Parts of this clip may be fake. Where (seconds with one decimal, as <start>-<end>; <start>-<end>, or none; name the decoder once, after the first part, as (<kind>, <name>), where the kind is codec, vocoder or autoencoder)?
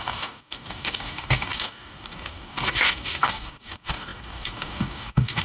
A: 0.0-5.4 (codec, DAC)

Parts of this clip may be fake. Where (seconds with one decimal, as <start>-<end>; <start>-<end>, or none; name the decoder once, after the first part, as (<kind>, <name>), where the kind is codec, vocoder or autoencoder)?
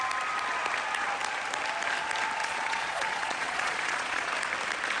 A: 2.4-4.3 (vocoder, Vocos)